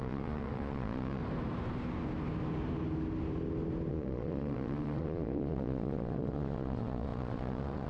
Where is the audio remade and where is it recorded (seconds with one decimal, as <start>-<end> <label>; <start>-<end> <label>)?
0.0-1.2 remade; 1.2-3.9 recorded; 3.9-7.9 remade